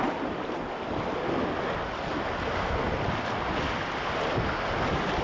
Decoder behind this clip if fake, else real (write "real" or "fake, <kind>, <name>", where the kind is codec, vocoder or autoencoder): real